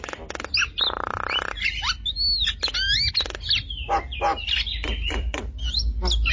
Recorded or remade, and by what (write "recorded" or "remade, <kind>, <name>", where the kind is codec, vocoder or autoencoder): recorded